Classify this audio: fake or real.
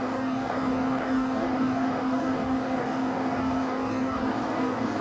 fake